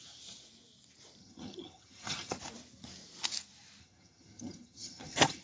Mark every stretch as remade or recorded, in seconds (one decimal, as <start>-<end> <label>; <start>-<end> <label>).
0.0-1.2 recorded; 1.2-2.4 remade; 2.4-3.8 recorded; 3.8-5.4 remade